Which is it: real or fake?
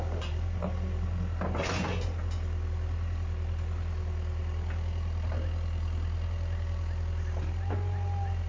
real